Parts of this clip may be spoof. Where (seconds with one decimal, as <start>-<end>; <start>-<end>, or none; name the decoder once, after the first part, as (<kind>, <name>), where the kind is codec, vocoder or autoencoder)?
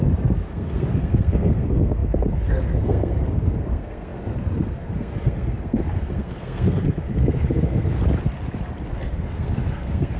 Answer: 0.0-8.0 (codec, SNAC); 8.9-10.2